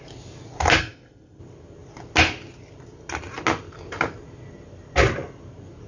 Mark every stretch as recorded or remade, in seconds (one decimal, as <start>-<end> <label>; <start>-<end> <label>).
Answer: 0.0-0.8 recorded; 0.8-1.4 remade; 1.4-5.9 recorded